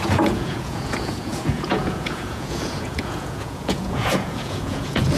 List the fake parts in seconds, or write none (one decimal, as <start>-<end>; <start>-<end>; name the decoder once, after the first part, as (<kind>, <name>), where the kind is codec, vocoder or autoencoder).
0.0-5.2 (vocoder, Vocos)